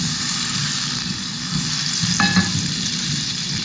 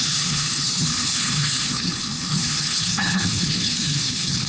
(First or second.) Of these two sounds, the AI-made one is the second